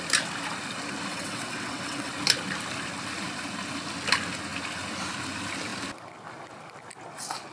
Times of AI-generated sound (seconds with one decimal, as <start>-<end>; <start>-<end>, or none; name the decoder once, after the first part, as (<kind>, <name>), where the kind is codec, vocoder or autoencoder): 1.1-2.1 (vocoder, WaveNeXt)